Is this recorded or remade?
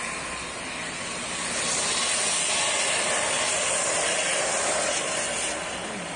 recorded